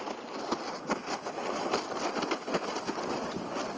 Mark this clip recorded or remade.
recorded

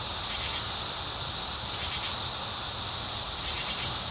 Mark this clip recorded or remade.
recorded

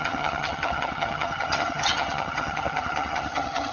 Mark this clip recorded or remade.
remade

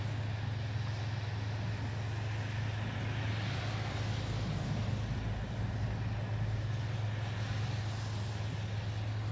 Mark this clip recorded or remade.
recorded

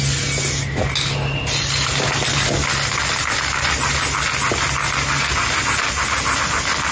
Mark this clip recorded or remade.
recorded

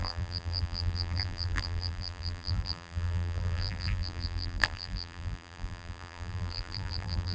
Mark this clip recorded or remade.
remade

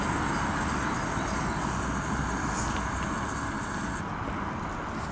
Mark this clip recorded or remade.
recorded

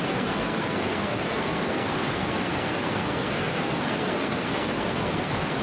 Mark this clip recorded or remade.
remade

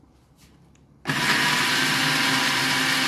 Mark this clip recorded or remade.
recorded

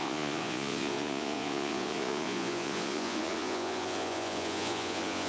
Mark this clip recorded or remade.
remade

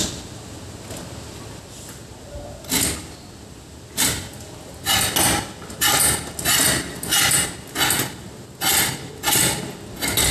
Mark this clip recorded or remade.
recorded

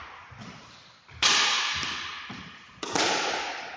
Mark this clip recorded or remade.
recorded